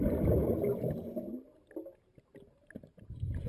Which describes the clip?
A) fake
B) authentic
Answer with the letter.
B